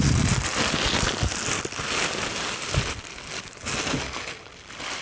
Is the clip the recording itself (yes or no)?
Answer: yes